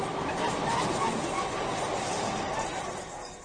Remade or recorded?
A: recorded